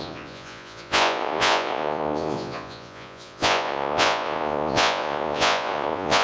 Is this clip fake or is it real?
fake